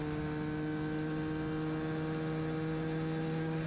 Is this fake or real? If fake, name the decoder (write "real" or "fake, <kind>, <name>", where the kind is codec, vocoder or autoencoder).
real